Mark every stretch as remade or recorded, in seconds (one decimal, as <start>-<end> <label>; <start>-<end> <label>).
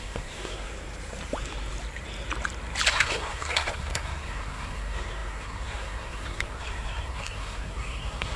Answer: 0.0-0.7 remade; 0.7-2.9 recorded; 2.9-8.4 remade